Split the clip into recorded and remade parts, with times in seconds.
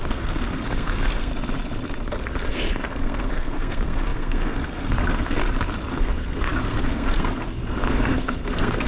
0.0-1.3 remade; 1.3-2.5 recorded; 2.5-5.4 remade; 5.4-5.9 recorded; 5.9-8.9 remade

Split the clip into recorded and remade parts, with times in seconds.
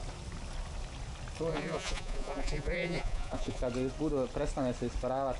0.0-1.5 recorded; 1.5-3.6 remade; 3.6-5.4 recorded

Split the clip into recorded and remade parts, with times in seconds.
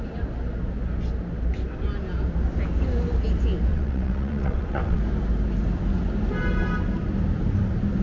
0.0-3.7 recorded; 3.7-5.0 remade; 5.0-8.0 recorded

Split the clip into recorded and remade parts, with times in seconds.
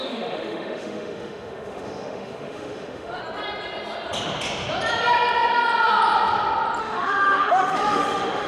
0.0-3.2 remade; 3.2-6.8 recorded; 6.8-8.5 remade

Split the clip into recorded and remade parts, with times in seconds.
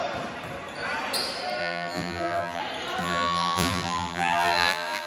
0.0-1.6 recorded; 1.6-2.6 remade; 2.6-3.0 recorded; 3.0-5.1 remade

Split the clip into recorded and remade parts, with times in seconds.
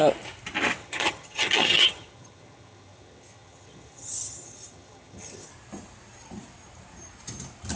0.0-0.8 recorded; 0.8-5.5 remade; 5.5-7.8 recorded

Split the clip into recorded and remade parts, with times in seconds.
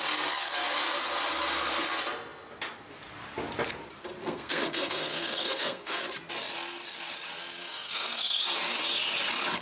0.0-4.2 recorded; 4.2-6.0 remade; 6.0-7.6 recorded; 7.6-8.4 remade; 8.4-9.6 recorded